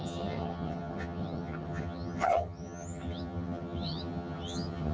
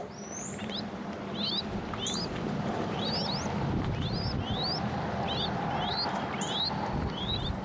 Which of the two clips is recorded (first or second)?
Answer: second